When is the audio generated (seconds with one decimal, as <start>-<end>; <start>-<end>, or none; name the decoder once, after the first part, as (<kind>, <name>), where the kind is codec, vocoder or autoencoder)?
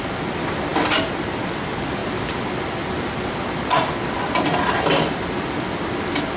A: none